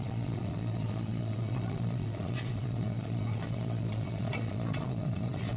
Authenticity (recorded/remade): remade